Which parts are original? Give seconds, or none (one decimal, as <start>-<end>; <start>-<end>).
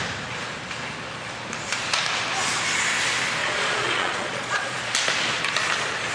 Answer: 0.0-3.4; 4.8-6.1